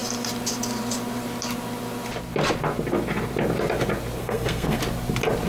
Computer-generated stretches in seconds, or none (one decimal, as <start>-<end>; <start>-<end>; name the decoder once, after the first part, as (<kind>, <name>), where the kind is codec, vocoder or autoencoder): 4.2-4.8 (codec, SNAC)

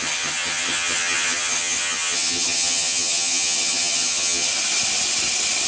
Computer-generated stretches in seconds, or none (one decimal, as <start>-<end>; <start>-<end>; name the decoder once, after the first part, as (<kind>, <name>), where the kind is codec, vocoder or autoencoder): 0.0-4.5 (vocoder, HiFi-GAN)

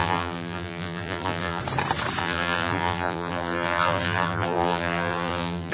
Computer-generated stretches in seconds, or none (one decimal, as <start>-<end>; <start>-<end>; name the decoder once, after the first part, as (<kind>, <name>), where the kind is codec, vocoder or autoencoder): 0.0-1.6 (vocoder, BigVGAN v2); 2.2-5.7

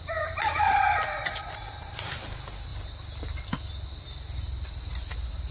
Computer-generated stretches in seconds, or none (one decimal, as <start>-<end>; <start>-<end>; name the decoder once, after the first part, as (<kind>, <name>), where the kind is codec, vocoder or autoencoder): none

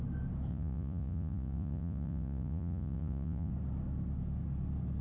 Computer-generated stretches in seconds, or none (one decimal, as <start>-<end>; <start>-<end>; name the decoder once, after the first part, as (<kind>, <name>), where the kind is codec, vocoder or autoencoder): 0.5-3.5 (vocoder, Vocos)

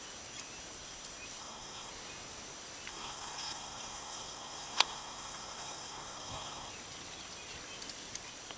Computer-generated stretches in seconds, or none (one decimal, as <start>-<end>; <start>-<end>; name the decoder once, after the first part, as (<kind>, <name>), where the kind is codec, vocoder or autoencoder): 1.4-1.9 (codec, SNAC); 2.9-6.7